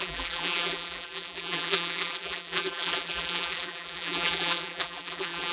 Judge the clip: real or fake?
fake